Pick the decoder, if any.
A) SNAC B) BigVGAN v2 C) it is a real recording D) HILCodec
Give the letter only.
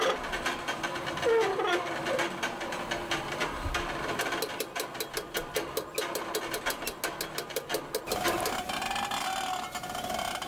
C